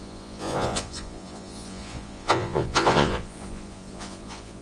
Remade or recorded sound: remade